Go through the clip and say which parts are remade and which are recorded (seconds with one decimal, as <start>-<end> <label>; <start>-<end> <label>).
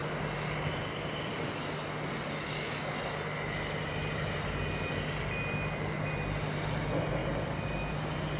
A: 0.0-8.4 recorded